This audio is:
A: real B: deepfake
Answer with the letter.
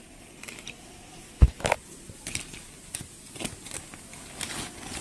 A